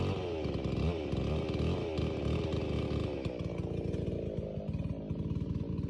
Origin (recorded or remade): recorded